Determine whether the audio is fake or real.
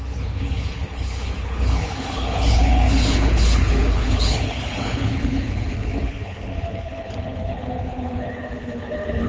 fake